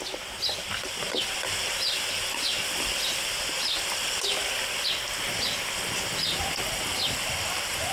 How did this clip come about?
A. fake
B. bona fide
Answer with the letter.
B